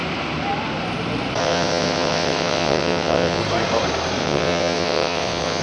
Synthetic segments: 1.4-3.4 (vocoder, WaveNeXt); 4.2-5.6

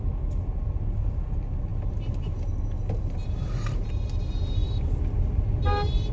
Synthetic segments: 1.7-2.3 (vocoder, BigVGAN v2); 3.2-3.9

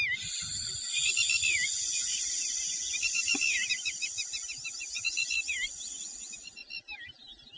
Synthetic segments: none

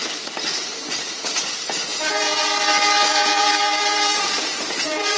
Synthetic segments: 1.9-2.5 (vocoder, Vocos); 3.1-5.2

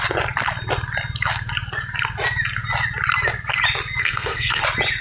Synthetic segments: 4.0-4.6 (codec, SNAC)

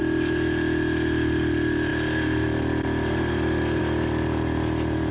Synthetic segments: none

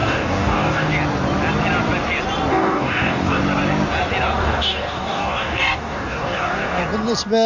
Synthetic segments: 0.0-0.9 (codec, DAC); 2.5-3.4; 4.4-6.8